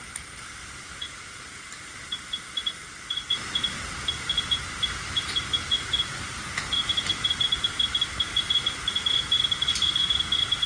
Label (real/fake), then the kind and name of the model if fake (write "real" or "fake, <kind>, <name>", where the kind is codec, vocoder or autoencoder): fake, vocoder, BigVGAN v2